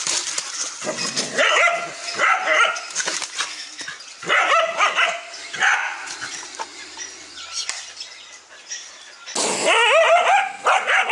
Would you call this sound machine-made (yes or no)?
no